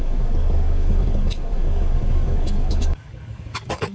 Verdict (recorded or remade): remade